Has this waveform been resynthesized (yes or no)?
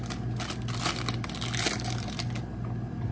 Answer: no